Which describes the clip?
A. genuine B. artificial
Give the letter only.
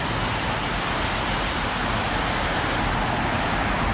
A